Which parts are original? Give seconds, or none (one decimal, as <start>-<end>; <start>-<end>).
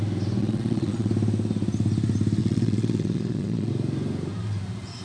0.0-0.4; 1.1-2.4; 3.7-5.0